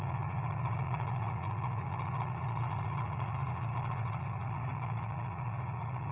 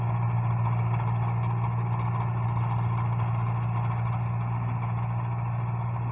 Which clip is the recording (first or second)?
second